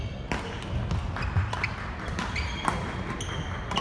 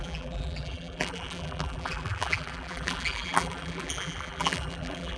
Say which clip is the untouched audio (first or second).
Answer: first